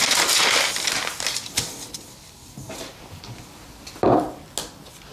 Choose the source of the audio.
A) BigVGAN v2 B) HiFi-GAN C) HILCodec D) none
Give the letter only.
D